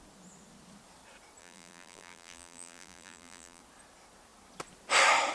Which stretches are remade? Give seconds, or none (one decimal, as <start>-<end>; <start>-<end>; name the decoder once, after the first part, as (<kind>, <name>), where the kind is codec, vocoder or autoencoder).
1.4-3.6 (vocoder, BigVGAN v2)